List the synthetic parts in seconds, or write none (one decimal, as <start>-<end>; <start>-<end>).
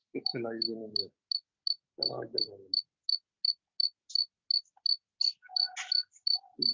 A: 0.0-0.9